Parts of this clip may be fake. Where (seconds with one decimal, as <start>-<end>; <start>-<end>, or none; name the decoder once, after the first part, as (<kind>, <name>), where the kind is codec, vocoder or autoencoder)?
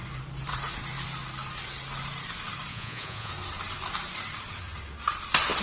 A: 2.7-3.3 (vocoder, Vocos)